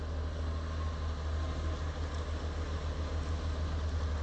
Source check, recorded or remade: recorded